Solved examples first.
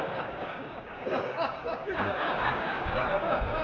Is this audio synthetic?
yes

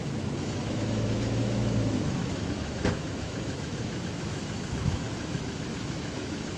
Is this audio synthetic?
yes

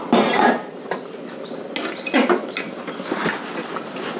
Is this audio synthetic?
no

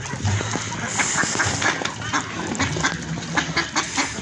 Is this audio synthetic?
no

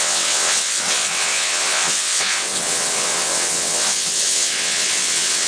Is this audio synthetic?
yes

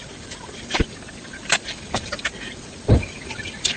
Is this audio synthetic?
yes